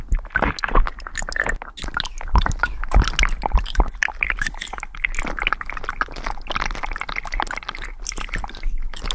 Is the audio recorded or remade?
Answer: recorded